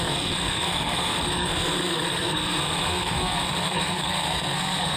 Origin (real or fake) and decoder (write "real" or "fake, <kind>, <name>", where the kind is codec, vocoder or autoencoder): fake, codec, SNAC